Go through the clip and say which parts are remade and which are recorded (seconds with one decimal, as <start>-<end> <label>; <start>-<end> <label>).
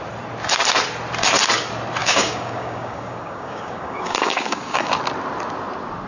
0.0-2.0 recorded; 2.0-4.9 remade; 4.9-6.1 recorded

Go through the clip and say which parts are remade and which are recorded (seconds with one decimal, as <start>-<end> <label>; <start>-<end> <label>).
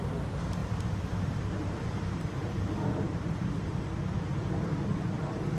0.0-0.6 recorded; 0.6-1.8 remade; 1.8-5.6 recorded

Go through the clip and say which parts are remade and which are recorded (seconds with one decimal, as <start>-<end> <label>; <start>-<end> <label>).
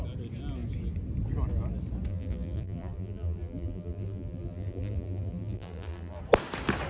0.0-2.1 recorded; 2.1-6.2 remade; 6.2-6.9 recorded